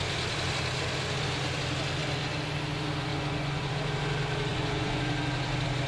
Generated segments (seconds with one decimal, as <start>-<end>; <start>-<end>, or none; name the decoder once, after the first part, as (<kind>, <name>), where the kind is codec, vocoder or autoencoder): 3.1-3.7 (vocoder, Vocos); 4.5-5.0